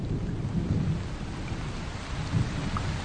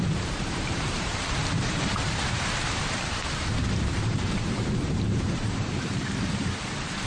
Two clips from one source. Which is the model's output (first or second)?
second